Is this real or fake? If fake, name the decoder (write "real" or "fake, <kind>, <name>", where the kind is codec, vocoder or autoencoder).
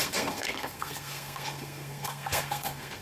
fake, codec, SNAC